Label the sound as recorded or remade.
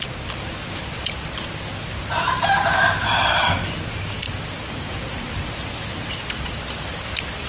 remade